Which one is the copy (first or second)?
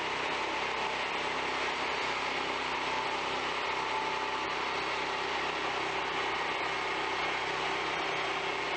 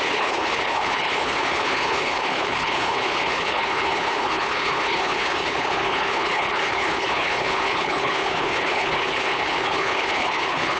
second